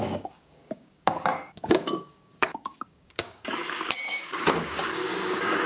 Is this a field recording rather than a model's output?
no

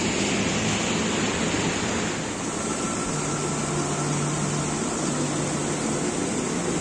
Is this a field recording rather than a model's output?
yes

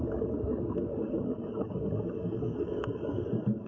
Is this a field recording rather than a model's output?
no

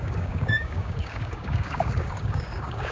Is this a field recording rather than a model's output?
no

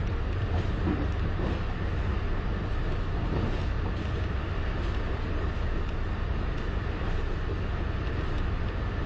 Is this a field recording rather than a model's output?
yes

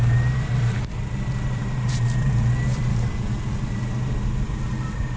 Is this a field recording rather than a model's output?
yes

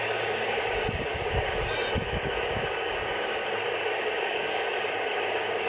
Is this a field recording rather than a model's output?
no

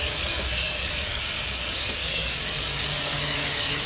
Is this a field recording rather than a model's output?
no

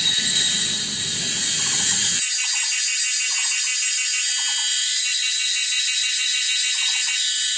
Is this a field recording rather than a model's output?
yes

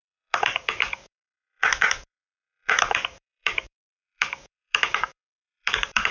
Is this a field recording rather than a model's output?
no